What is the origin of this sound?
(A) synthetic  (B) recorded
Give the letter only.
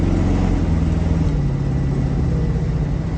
B